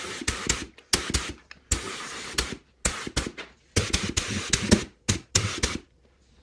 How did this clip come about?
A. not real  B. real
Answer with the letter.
B